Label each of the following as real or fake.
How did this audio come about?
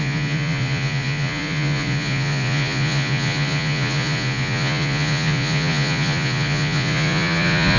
fake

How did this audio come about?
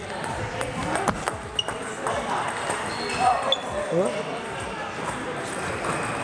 real